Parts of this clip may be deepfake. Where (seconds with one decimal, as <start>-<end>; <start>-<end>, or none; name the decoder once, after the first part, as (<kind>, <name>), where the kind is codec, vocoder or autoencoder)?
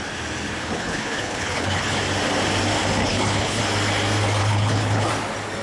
0.6-2.0 (codec, HILCodec); 3.0-3.6; 4.4-5.1